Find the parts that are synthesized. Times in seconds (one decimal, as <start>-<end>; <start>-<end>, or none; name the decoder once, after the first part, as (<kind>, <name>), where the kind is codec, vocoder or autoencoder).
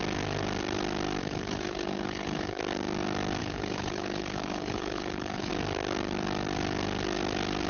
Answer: 1.2-2.6 (codec, HILCodec); 3.4-5.5